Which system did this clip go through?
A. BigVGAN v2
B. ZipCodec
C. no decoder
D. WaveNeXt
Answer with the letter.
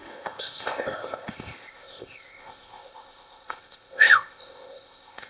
B